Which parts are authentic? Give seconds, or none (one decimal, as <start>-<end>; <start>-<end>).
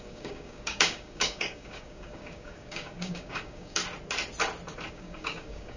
3.8-4.9